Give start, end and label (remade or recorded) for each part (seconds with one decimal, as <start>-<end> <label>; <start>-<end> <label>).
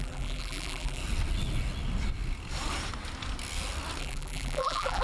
0.0-1.0 remade; 1.0-4.0 recorded; 4.0-5.0 remade